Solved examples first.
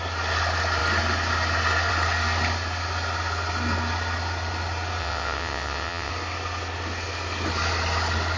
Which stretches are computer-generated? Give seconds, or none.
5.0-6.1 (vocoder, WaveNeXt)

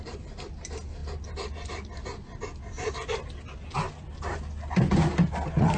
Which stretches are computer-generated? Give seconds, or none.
none

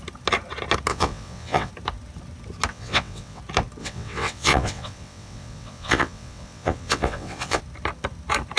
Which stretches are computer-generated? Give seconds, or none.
0.9-1.7 (vocoder, WaveNeXt); 2.7-3.4; 3.8-7.6

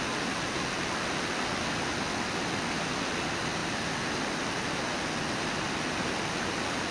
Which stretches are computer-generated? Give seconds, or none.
none